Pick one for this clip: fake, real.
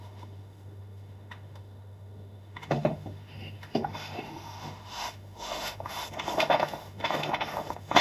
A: fake